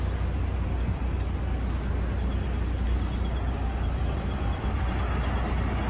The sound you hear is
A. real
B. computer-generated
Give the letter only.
A